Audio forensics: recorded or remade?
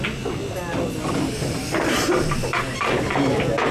recorded